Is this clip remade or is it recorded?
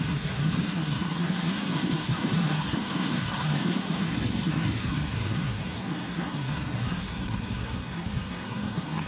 remade